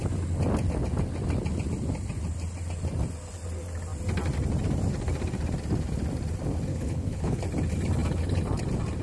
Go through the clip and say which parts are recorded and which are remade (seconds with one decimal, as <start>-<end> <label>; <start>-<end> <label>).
0.0-6.7 recorded; 6.7-7.4 remade; 7.4-9.0 recorded